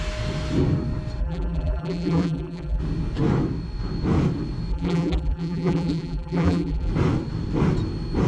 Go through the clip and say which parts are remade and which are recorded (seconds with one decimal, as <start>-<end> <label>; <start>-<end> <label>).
0.0-1.2 recorded; 1.2-2.8 remade; 2.8-4.7 recorded; 4.7-6.9 remade; 6.9-8.3 recorded